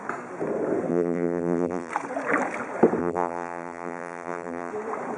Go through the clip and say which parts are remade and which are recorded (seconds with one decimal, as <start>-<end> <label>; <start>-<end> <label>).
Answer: 0.0-0.9 recorded; 0.9-1.9 remade; 1.9-3.0 recorded; 3.0-4.7 remade; 4.7-5.2 recorded